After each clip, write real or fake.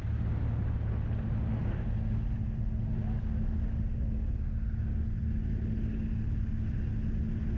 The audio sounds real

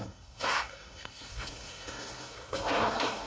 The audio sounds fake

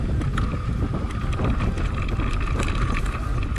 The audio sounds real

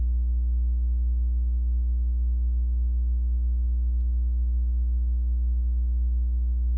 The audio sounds real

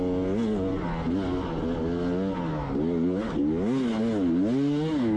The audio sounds real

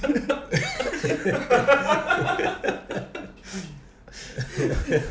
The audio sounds real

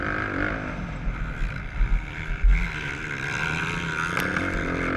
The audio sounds real